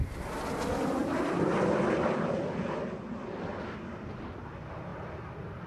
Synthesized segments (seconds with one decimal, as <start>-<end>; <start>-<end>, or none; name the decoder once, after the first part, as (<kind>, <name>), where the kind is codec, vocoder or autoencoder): none

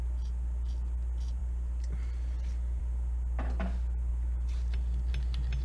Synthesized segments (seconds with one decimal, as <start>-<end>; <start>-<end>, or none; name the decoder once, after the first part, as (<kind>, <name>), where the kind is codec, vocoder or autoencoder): 1.4-2.8 (vocoder, BigVGAN v2); 4.1-5.1

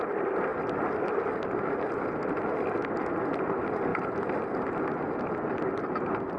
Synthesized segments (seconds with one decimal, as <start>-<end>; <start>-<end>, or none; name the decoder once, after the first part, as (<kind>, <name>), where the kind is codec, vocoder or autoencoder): none

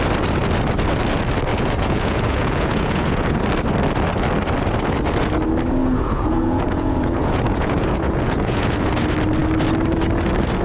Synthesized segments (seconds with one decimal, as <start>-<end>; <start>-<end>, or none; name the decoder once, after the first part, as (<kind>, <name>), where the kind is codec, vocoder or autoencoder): 1.5-3.4 (vocoder, Vocos); 5.8-8.9

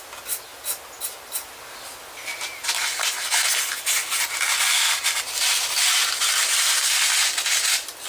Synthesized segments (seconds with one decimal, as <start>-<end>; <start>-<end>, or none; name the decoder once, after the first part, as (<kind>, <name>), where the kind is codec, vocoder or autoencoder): none